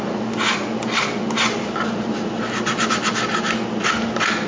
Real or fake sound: real